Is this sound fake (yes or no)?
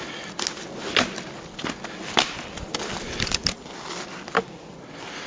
no